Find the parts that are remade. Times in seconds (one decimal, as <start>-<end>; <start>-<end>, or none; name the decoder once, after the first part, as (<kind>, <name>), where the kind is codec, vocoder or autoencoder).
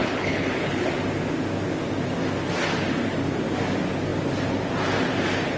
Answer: 0.0-0.9 (codec, HILCodec)